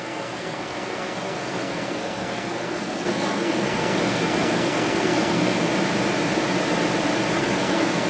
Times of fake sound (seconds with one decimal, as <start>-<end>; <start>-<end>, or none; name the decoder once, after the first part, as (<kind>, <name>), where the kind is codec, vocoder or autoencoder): 0.0-5.7 (codec, SNAC); 7.4-8.1